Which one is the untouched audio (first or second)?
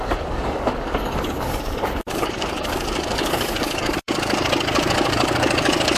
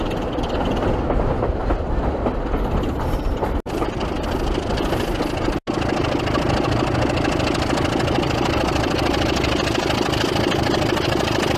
second